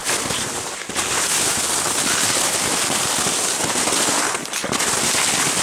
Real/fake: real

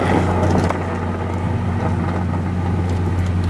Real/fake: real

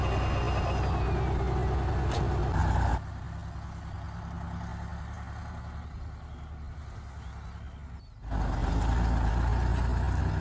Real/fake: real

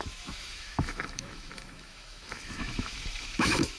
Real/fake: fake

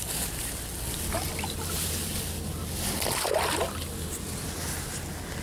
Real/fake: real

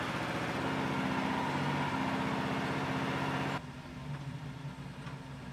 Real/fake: real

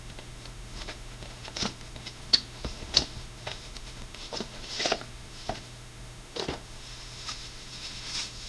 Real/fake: fake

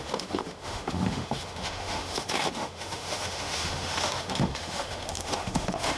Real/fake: fake